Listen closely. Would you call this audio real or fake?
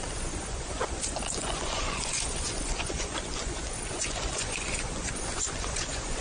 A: fake